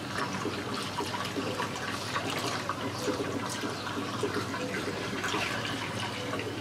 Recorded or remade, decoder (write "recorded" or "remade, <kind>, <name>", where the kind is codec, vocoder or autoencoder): remade, vocoder, BigVGAN v2